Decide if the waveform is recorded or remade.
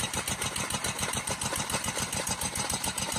recorded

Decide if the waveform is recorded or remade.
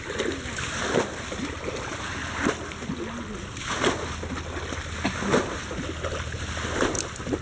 recorded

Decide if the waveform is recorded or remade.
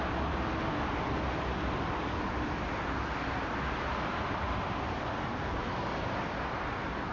recorded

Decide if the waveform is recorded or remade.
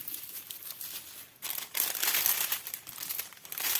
recorded